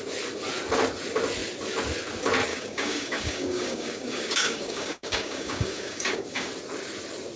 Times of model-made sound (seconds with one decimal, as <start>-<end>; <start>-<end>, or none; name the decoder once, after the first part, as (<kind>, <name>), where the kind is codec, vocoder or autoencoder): 2.5-6.5 (codec, DAC)